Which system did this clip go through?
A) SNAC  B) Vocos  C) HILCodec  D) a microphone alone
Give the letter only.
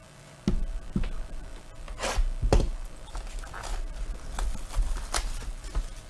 D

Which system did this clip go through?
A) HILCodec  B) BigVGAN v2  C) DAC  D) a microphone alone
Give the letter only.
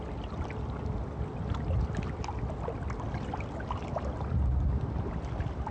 D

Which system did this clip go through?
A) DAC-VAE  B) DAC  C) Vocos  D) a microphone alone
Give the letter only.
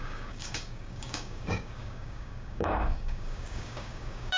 B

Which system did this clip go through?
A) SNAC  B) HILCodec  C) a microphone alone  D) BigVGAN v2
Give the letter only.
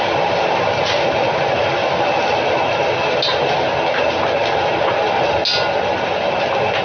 C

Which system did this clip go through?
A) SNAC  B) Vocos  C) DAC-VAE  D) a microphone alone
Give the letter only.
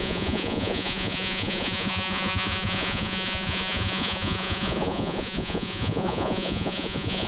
B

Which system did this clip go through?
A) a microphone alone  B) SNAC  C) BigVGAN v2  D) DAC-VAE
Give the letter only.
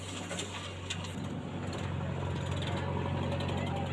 A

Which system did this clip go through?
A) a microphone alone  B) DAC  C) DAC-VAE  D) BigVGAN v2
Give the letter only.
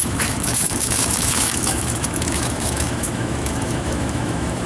C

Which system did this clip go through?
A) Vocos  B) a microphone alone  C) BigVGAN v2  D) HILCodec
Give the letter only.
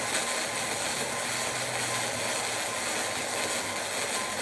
B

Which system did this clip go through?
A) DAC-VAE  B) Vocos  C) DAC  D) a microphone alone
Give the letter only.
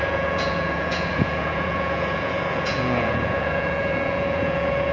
B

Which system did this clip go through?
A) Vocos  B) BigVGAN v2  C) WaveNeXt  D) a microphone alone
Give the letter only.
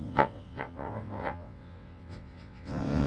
C